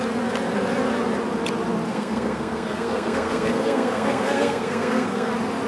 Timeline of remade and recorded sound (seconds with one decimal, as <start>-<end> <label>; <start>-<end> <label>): 0.0-1.9 recorded; 1.9-5.3 remade; 5.3-5.7 recorded